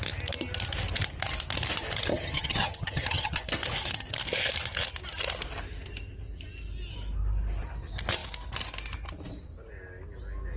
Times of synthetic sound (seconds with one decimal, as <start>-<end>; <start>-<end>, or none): 2.1-3.4